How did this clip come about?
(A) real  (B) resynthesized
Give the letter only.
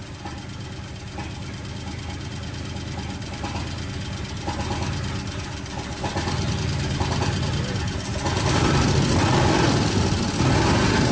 A